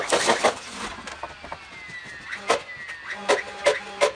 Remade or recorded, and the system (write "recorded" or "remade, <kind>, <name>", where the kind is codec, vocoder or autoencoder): recorded